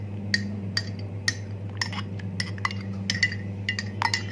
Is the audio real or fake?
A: real